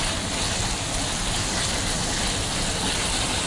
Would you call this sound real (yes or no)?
yes